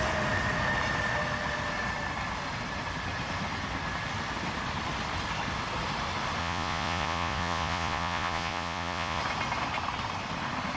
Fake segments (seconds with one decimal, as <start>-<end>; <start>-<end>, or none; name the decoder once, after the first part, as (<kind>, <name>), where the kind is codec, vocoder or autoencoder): 6.4-9.2 (vocoder, Vocos)